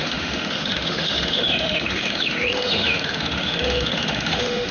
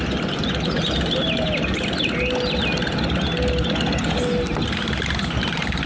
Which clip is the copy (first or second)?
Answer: first